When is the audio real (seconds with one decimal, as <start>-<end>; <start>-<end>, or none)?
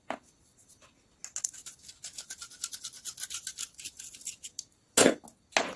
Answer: 0.0-5.8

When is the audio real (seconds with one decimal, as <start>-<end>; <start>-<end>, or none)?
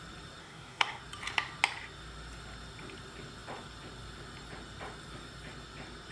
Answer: 0.0-0.4; 1.0-6.1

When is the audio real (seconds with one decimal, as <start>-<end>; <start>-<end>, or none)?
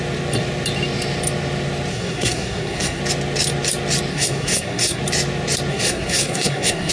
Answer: 0.0-1.9; 3.0-4.1; 5.0-5.7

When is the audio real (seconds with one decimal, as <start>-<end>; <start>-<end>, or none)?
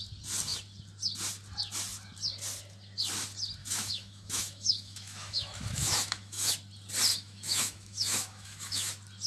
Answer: 0.0-3.6; 6.5-7.1; 8.9-9.3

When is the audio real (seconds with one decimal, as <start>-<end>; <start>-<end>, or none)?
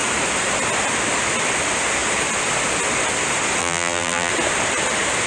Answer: 0.0-3.6; 4.3-5.3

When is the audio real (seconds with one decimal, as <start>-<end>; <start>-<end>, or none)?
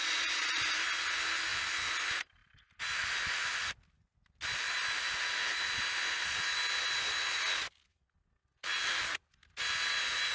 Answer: 0.6-10.3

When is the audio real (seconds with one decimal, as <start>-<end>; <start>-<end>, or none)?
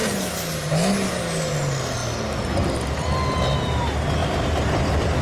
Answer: 0.0-5.2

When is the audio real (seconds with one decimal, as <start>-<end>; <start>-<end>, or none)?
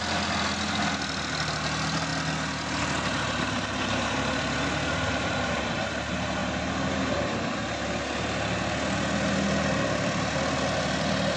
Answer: 0.0-11.4